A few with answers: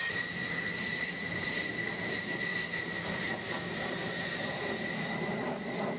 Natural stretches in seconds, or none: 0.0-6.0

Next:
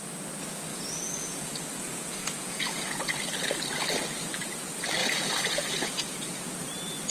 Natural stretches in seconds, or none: 0.0-0.7; 3.2-5.0; 6.5-7.1

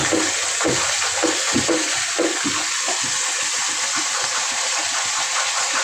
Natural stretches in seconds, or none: 0.0-5.8

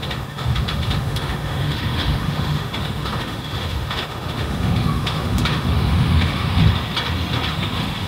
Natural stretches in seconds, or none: 6.6-7.5

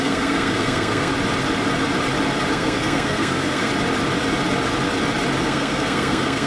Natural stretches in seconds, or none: 1.1-2.5; 3.7-5.4